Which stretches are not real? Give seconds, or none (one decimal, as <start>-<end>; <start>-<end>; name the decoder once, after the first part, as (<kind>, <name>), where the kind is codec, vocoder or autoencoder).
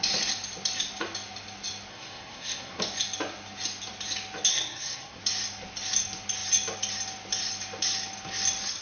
1.9-2.8 (codec, SNAC); 4.5-5.2